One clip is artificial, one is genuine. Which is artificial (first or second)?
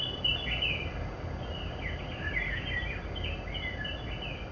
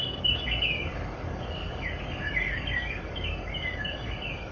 second